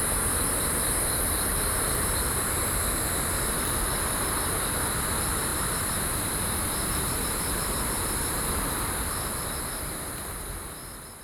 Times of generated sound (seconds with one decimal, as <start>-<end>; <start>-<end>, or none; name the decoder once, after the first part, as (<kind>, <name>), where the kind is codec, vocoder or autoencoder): 1.5-2.5 (vocoder, BigVGAN v2); 5.5-8.5